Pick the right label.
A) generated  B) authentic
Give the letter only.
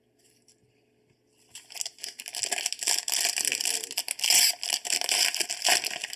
B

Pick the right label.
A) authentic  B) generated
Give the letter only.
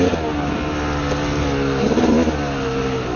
A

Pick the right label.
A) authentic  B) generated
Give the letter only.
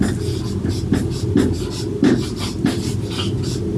A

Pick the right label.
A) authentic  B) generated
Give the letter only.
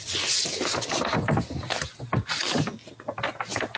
A